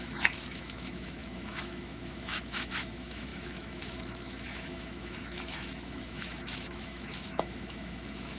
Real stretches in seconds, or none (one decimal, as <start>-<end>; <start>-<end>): none